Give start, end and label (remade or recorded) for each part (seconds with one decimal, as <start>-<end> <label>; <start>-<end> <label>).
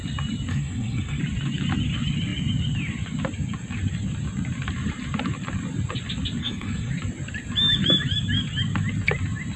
0.0-0.5 recorded; 0.5-1.2 remade; 1.2-6.4 recorded; 6.4-6.9 remade; 6.9-9.6 recorded